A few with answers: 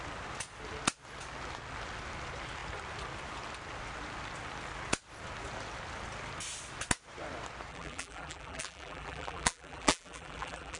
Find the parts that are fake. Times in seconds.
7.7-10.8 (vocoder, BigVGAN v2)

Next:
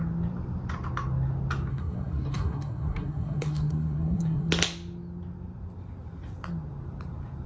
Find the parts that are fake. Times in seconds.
1.7-4.5 (codec, SNAC)